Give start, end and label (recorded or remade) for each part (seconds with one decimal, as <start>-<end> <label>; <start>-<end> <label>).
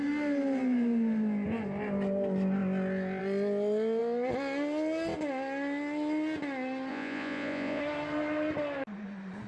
0.0-6.9 recorded; 6.9-7.8 remade; 7.8-9.5 recorded